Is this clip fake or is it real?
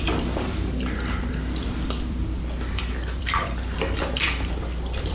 fake